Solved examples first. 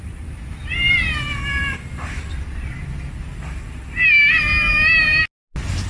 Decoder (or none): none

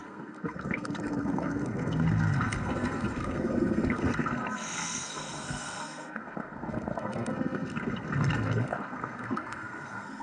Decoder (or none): codec, SNAC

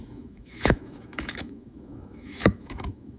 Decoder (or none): autoencoder, DAC-VAE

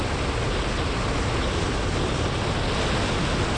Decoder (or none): none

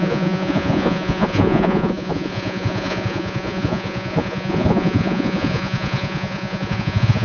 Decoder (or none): vocoder, Vocos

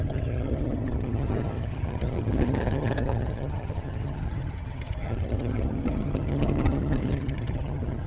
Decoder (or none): vocoder, HiFi-GAN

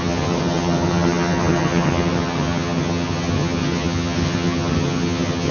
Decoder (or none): vocoder, HiFi-GAN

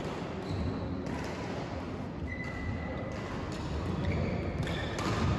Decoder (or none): none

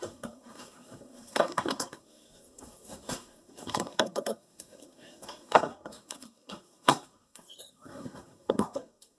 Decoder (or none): codec, SNAC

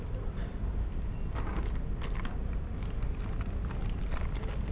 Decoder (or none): none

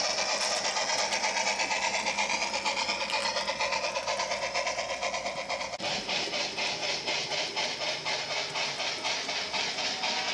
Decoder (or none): none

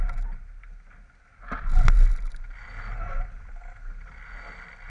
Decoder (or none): none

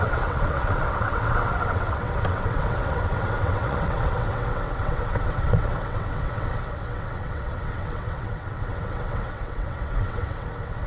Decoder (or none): vocoder, WaveNeXt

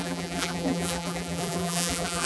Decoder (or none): vocoder, BigVGAN v2